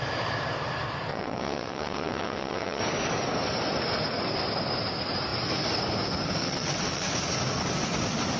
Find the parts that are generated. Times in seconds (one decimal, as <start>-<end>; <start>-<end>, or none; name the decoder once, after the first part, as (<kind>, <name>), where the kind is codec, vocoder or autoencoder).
1.1-2.8 (vocoder, WaveNeXt); 6.4-7.1